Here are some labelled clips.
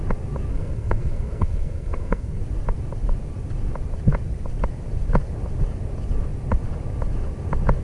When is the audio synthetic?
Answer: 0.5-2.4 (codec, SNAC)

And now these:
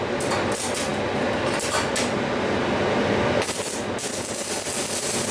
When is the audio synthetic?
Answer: none

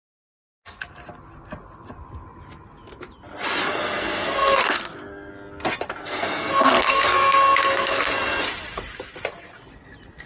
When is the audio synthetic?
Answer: 3.6-5.3 (codec, SNAC); 6.0-8.1

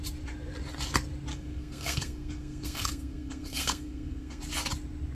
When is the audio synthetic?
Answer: 1.3-4.4 (codec, SNAC)

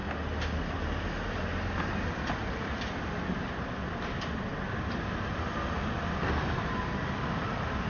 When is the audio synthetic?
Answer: none

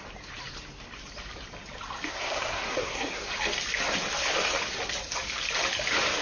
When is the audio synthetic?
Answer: 2.1-3.3 (codec, SNAC)